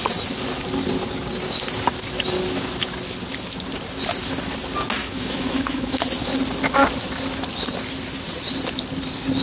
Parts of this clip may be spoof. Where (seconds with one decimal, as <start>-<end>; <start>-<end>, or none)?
5.0-6.0